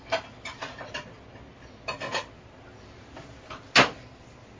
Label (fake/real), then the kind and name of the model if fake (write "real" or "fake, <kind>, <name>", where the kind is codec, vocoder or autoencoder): real